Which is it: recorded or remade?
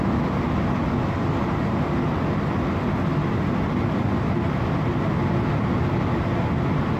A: recorded